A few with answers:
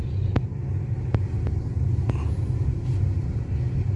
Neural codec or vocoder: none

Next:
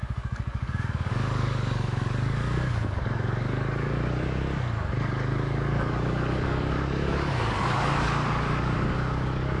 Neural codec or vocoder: codec, DAC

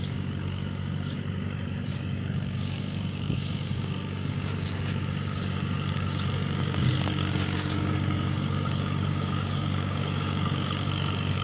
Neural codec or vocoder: codec, DAC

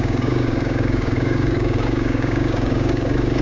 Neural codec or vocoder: codec, DAC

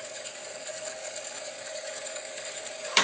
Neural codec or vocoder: codec, DAC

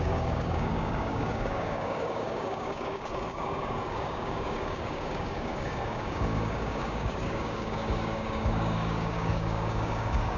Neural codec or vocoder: codec, DAC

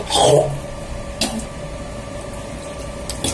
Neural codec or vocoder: none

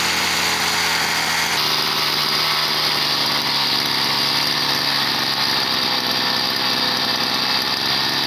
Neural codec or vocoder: none